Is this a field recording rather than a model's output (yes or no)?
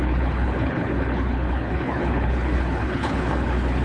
no